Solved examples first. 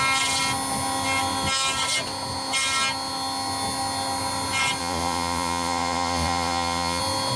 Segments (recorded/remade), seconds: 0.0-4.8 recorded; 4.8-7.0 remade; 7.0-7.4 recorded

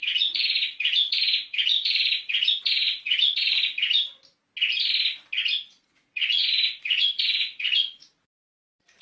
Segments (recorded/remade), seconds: 0.0-3.7 remade; 3.7-5.8 recorded; 5.8-9.0 remade